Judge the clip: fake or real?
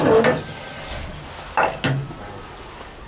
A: real